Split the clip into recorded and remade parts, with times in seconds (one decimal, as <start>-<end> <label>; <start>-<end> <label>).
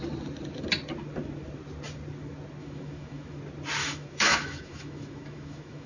0.0-2.6 recorded; 2.6-3.4 remade; 3.4-3.8 recorded; 3.8-5.9 remade